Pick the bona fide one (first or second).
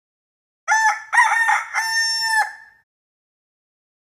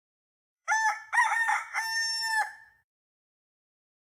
first